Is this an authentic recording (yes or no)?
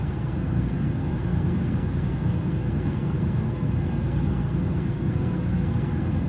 no